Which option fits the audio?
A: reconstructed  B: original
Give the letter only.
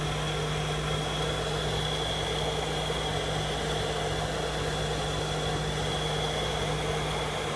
B